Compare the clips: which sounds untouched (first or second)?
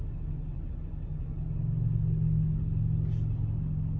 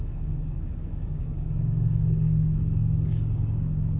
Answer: first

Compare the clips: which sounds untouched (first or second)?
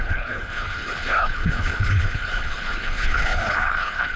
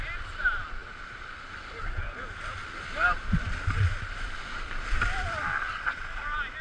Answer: second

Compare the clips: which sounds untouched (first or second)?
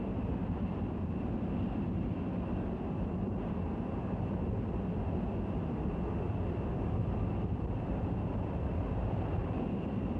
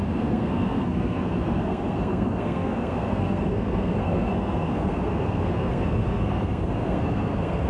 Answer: first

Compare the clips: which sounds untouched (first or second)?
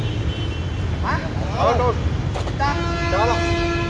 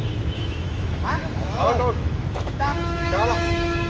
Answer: first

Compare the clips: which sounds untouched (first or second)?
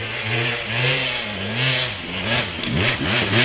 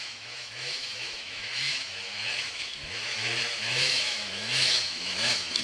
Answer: first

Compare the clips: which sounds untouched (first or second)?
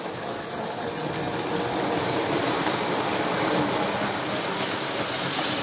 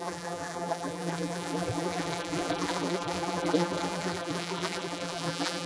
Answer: first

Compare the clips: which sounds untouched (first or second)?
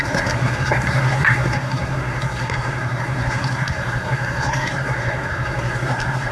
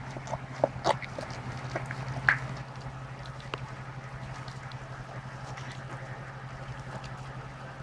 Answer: second